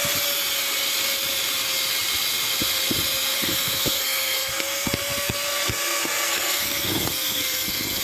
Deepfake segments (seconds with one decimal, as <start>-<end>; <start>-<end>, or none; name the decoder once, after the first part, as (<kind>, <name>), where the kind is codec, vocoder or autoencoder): 3.4-8.0 (codec, SNAC)

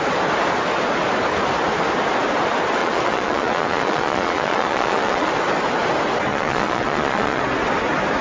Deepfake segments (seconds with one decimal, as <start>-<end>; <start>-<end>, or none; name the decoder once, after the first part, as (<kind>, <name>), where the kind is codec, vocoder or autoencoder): 2.8-5.3 (vocoder, Vocos); 6.3-7.4

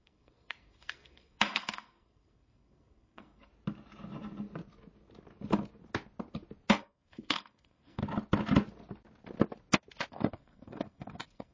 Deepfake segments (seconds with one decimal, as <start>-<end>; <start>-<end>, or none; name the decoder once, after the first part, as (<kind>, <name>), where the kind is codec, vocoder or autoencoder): 0.0-3.5 (codec, SNAC); 6.7-8.0; 10.1-11.5

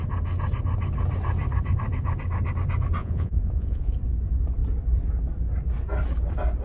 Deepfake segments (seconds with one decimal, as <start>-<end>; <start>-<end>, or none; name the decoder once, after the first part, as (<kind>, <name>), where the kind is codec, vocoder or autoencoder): 3.0-3.9 (vocoder, Vocos)

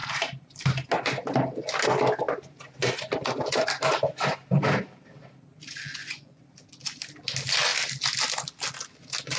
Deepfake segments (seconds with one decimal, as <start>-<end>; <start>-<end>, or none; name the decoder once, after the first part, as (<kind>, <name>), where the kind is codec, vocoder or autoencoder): 5.9-6.4 (vocoder, Vocos)